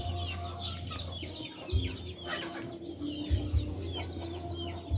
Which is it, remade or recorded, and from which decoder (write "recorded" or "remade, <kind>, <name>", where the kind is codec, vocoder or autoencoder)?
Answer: recorded